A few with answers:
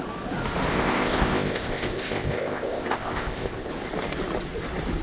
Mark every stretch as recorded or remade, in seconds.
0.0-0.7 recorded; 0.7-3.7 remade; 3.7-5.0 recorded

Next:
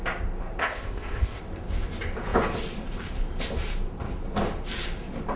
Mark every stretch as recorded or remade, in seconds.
0.0-0.6 recorded; 0.6-1.4 remade; 1.4-5.4 recorded